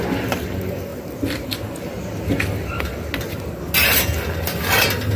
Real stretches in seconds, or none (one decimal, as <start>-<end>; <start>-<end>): 0.0-5.2